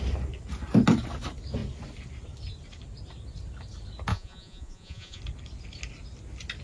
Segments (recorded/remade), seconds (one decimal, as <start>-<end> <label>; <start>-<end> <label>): 0.0-4.1 recorded; 4.1-5.2 remade; 5.2-6.6 recorded